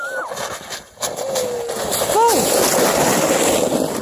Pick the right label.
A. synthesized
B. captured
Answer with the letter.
B